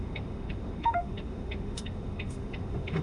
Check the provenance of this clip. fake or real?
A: fake